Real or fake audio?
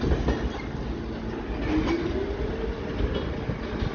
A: real